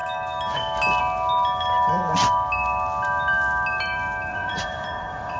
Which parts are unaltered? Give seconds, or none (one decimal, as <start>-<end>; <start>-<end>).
0.0-4.3